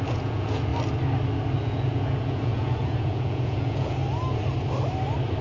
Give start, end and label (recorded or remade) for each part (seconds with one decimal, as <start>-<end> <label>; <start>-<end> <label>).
0.0-0.7 remade; 0.7-1.6 recorded; 1.6-4.0 remade; 4.0-5.4 recorded